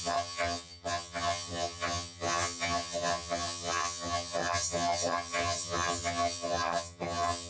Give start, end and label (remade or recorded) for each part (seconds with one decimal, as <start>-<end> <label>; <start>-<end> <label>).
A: 0.0-7.5 remade